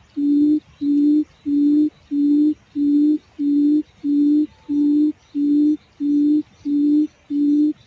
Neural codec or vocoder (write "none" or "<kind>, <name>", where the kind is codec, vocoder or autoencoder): none